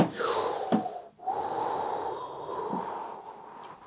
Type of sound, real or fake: real